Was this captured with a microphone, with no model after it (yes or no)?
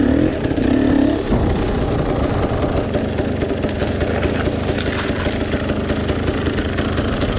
yes